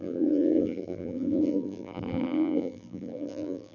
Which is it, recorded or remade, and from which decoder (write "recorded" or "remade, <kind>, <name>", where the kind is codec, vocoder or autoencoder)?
remade, vocoder, BigVGAN v2